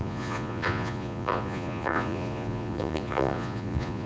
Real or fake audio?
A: fake